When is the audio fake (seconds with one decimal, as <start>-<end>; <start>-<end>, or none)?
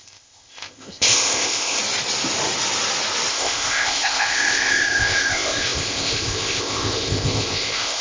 0.0-1.8; 3.3-8.0